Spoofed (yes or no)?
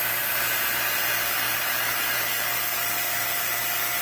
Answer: no